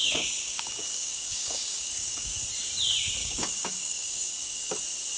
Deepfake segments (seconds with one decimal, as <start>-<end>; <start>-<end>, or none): 0.0-2.4; 3.2-4.8